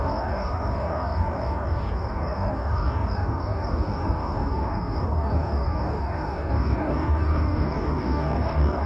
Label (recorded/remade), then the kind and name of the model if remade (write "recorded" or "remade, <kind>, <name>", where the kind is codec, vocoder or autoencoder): remade, codec, DAC